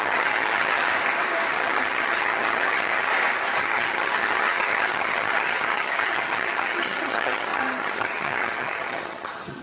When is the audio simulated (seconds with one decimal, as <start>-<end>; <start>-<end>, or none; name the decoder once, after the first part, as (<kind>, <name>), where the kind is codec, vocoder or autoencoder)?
0.0-0.9 (vocoder, HiFi-GAN); 1.5-3.1; 3.6-9.6